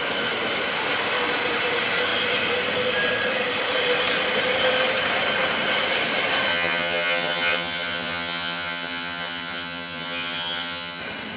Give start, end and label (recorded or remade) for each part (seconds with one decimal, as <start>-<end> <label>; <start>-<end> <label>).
0.0-6.5 recorded; 6.5-11.0 remade; 11.0-11.4 recorded